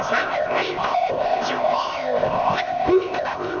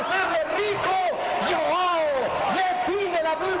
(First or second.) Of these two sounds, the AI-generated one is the first